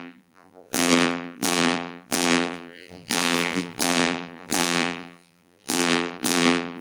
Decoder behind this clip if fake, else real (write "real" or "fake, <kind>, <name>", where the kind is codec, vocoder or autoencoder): fake, vocoder, BigVGAN v2